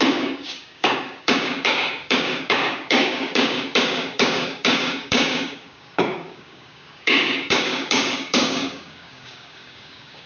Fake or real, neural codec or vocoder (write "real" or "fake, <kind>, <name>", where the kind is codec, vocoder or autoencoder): fake, codec, DAC